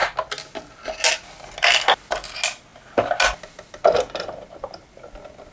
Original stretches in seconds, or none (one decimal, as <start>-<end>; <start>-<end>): 0.0-5.5